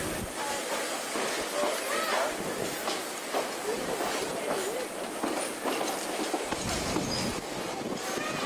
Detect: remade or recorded recorded